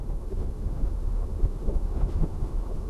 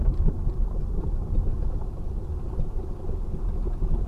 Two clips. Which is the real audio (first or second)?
second